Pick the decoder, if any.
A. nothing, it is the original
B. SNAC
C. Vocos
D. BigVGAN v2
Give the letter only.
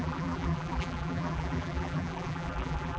D